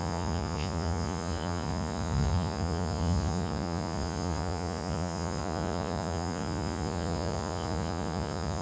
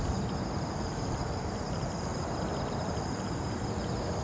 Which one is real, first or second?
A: second